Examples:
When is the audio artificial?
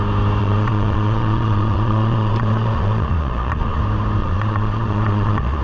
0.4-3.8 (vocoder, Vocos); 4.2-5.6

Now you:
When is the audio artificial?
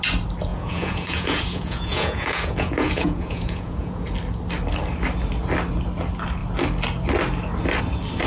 0.5-4.1 (vocoder, Vocos)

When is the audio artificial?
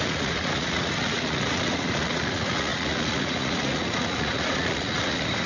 0.0-5.5 (vocoder, Vocos)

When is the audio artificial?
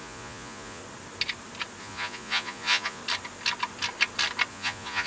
0.0-0.8 (vocoder, Vocos); 1.8-3.0; 4.5-5.1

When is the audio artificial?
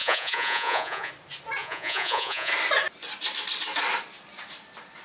0.0-1.1 (vocoder, Vocos); 1.6-2.5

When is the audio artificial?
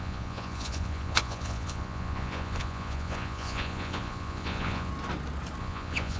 0.0-4.9 (vocoder, Vocos); 5.6-6.2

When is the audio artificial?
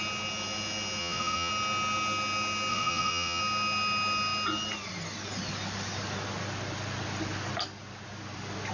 1.0-1.5 (vocoder, Vocos); 2.7-3.4